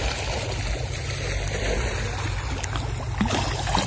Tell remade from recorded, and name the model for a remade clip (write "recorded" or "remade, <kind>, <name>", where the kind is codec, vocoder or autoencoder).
recorded